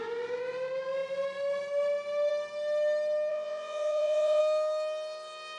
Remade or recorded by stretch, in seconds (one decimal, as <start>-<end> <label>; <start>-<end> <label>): 0.0-3.3 recorded; 3.3-4.4 remade; 4.4-5.6 recorded